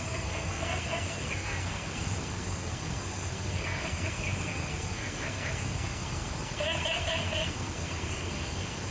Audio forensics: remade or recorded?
remade